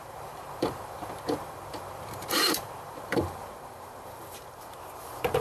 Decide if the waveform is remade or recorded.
remade